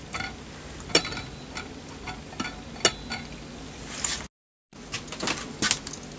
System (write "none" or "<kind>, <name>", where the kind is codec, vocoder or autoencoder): none